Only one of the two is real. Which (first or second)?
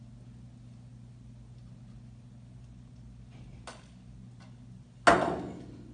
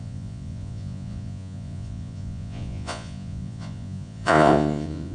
first